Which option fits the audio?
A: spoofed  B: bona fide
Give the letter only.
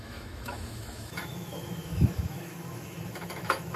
A